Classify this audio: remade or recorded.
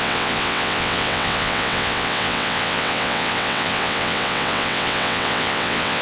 remade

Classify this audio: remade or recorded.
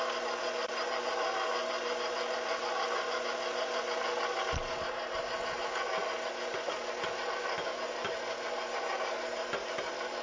recorded